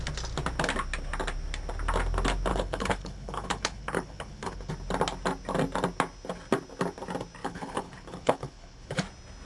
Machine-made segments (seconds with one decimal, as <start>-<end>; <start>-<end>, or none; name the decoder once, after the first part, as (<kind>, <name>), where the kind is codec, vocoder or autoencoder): 2.5-4.7 (codec, HILCodec); 7.4-9.0